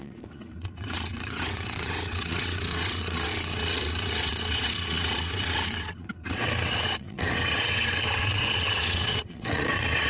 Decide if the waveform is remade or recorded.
remade